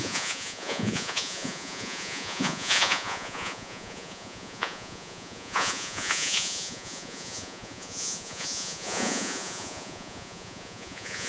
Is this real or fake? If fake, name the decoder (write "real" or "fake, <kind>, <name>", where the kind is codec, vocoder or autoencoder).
fake, vocoder, Vocos